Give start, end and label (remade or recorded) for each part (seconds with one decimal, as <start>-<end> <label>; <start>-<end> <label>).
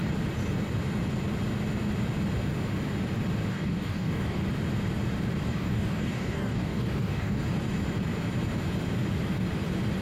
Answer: 0.0-3.5 recorded; 3.5-4.4 remade; 4.4-5.5 recorded; 5.5-7.4 remade; 7.4-10.0 recorded